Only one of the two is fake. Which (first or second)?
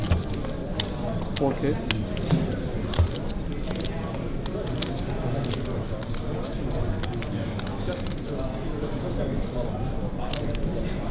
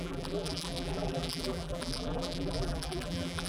second